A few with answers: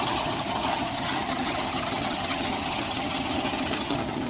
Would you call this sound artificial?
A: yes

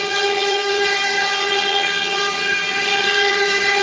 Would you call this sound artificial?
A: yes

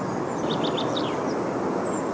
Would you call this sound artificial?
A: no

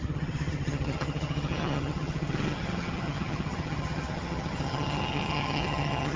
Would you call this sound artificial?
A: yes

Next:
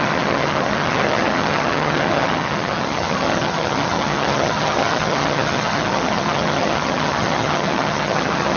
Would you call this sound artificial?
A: yes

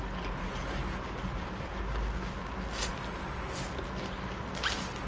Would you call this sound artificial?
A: no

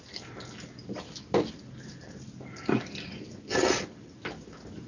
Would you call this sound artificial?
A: no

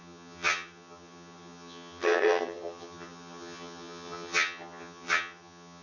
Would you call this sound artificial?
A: yes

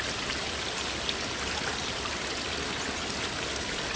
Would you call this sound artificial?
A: no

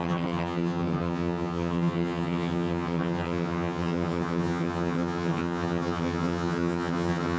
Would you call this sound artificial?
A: yes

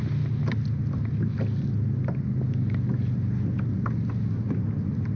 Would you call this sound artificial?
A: no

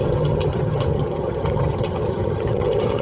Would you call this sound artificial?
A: yes